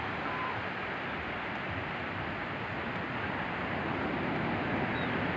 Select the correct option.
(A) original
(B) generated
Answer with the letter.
B